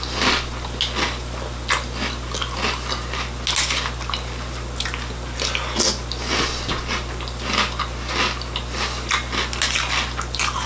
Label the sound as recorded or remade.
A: recorded